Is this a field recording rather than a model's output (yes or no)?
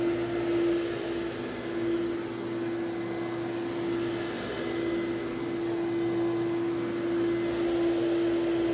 yes